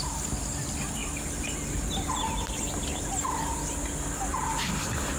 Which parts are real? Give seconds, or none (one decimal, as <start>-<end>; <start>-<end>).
0.0-5.2